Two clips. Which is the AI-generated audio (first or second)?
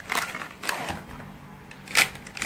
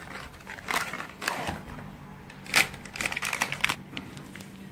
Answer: second